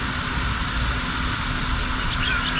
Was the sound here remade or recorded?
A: recorded